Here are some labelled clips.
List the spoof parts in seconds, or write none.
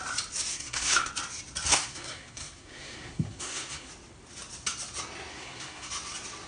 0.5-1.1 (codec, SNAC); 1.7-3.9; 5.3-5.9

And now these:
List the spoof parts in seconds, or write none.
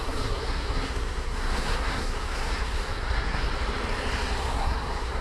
0.0-3.5 (codec, SNAC); 4.4-5.2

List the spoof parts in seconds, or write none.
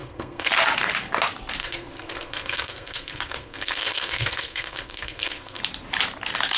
0.0-0.5 (codec, SNAC); 1.6-5.6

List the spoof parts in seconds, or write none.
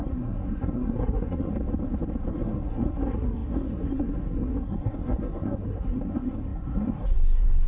0.0-1.5 (codec, SNAC); 2.3-7.7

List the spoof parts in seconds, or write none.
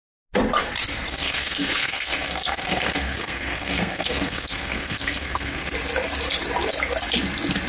1.1-5.7 (codec, SNAC)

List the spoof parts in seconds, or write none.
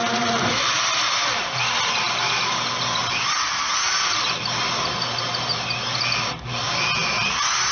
none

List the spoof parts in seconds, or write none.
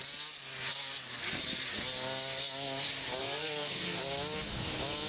3.2-4.0 (codec, SNAC)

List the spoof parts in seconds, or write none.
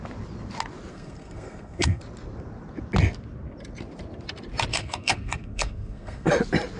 0.9-2.0 (codec, SNAC); 4.7-6.3